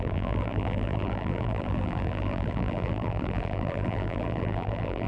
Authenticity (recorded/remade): remade